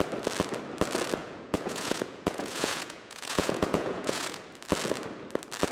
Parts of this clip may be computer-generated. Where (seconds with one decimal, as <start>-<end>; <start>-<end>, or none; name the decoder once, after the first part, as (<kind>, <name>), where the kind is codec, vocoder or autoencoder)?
1.2-4.4 (vocoder, Vocos)